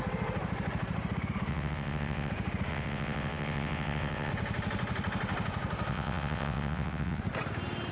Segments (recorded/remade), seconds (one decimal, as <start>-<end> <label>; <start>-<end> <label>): 0.0-1.5 recorded; 1.5-2.3 remade; 2.3-2.7 recorded; 2.7-4.3 remade; 4.3-5.9 recorded; 5.9-7.2 remade; 7.2-7.9 recorded